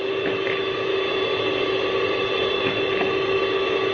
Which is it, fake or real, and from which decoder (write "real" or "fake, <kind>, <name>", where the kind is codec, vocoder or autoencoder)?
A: real